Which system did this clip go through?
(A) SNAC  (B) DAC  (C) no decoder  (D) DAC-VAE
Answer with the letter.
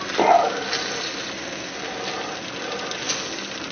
C